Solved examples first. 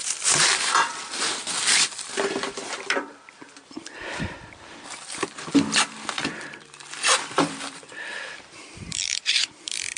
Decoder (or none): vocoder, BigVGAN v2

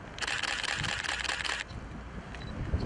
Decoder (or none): none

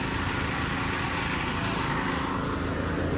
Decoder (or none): none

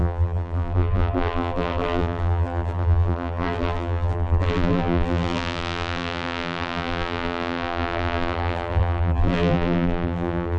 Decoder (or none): vocoder, BigVGAN v2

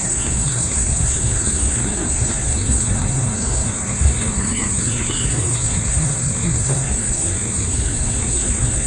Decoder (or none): codec, SNAC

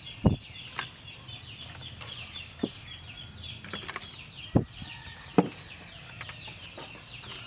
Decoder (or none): none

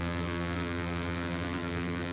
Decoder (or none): vocoder, BigVGAN v2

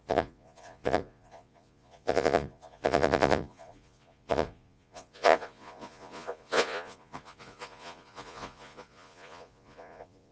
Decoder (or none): vocoder, Vocos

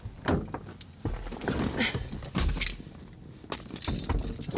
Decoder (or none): none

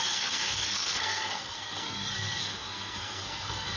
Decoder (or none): codec, SNAC